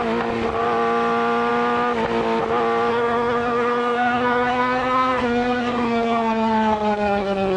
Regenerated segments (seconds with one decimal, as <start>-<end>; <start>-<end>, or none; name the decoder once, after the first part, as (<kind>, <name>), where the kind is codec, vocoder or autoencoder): 2.9-7.6 (codec, SNAC)